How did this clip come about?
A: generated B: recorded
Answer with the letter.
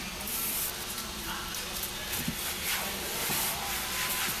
A